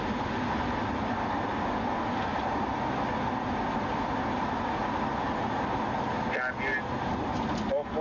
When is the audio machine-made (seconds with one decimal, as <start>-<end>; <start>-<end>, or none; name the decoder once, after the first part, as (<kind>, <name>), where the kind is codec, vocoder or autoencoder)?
none